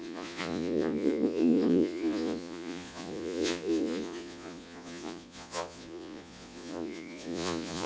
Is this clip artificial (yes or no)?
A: yes